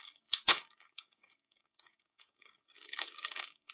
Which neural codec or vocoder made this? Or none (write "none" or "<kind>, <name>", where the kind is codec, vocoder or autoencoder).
codec, DAC